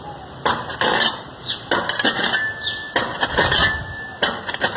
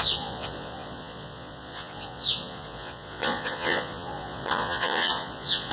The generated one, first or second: second